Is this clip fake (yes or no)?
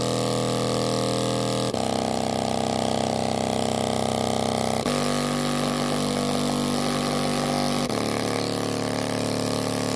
no